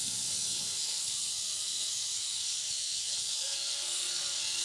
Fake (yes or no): yes